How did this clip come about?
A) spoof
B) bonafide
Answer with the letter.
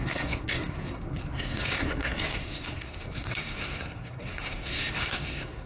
A